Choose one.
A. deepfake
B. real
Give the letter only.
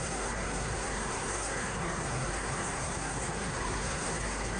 A